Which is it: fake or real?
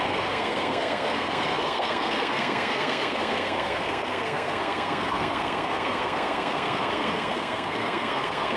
fake